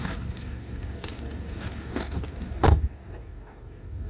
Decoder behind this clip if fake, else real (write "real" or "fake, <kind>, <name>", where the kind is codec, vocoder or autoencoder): fake, codec, DAC